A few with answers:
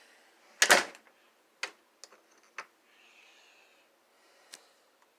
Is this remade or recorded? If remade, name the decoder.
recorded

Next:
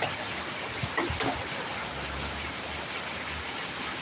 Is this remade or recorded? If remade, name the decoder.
recorded